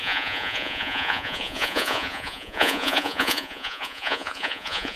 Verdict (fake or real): fake